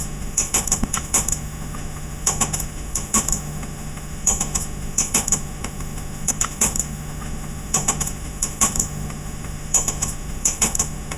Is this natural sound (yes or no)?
no